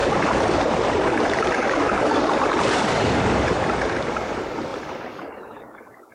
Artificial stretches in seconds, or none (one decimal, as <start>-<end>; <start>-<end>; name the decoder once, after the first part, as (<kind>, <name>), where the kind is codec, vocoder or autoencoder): 0.0-6.1 (codec, DAC)